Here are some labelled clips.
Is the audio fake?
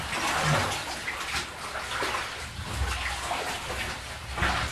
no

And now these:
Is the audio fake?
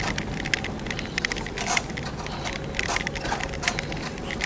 no